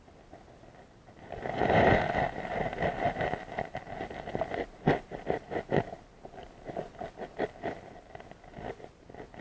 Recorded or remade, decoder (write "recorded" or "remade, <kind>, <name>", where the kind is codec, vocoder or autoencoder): recorded